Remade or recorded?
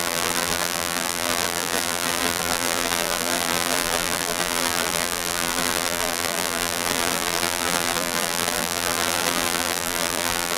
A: remade